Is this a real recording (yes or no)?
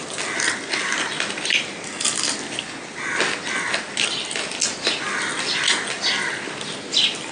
yes